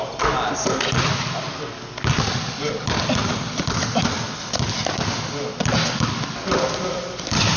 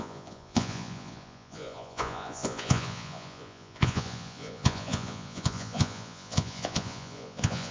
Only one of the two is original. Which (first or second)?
first